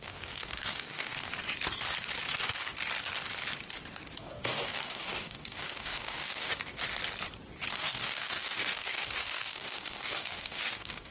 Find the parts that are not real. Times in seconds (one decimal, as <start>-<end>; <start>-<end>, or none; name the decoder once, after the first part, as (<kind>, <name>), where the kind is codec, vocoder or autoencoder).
0.0-1.3 (codec, DAC); 4.2-6.6; 7.7-11.1